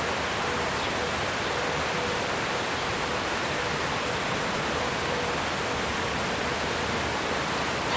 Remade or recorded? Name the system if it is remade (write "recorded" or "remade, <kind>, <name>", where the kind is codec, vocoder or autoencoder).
recorded